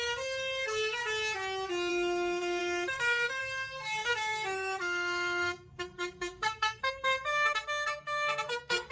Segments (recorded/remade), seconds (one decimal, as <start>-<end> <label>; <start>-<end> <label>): 0.0-1.0 remade; 1.0-1.9 recorded; 1.9-8.9 remade